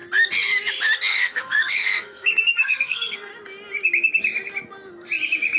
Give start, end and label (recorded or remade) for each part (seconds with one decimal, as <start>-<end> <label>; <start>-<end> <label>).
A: 0.0-1.1 recorded; 1.1-3.3 remade; 3.3-5.6 recorded